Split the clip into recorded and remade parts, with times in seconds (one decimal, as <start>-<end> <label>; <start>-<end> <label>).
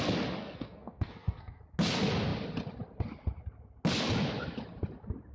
0.0-0.4 recorded; 0.4-1.6 remade; 1.6-5.3 recorded